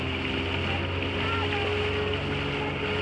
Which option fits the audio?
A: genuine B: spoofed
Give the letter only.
A